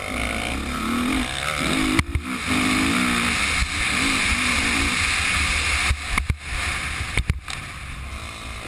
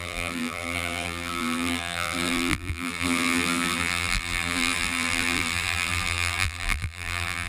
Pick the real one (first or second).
first